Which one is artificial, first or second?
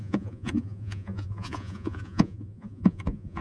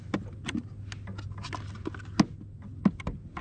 first